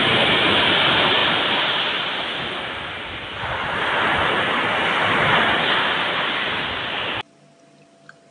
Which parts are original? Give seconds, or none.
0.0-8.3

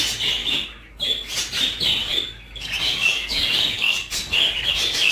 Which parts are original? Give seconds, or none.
0.0-0.4; 1.0-2.0